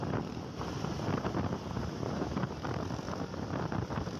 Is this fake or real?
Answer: real